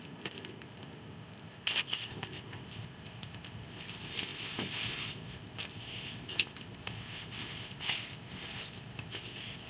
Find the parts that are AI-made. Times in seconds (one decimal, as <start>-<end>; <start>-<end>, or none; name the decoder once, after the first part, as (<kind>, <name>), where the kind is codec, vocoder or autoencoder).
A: 0.0-9.7 (codec, ZipCodec)